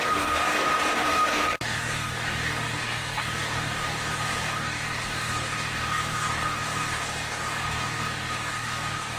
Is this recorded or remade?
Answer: remade